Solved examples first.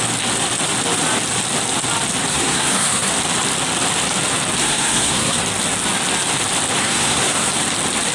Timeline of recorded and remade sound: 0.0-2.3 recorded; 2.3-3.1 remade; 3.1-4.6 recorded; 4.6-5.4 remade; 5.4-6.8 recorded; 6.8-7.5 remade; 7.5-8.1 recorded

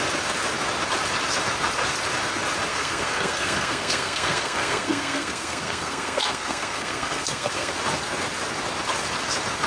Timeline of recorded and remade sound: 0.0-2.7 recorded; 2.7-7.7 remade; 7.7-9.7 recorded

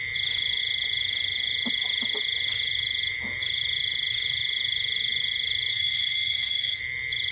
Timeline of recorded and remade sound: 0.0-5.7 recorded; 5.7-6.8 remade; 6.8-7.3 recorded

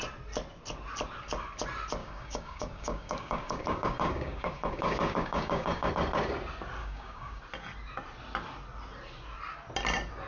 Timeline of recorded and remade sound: 0.0-2.0 recorded; 2.0-5.9 remade; 5.9-6.8 recorded; 6.8-7.4 remade; 7.4-10.3 recorded